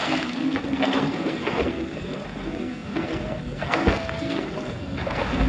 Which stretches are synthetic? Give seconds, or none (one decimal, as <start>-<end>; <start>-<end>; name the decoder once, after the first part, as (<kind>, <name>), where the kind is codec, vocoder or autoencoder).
0.0-5.5 (codec, SNAC)